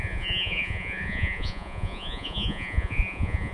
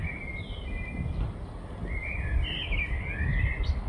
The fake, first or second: first